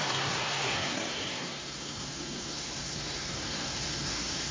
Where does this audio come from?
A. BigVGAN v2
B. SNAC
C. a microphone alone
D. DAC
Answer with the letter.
B